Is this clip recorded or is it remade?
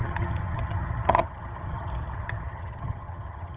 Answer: remade